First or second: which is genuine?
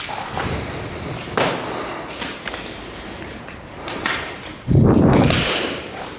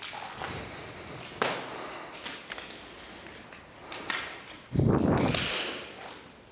second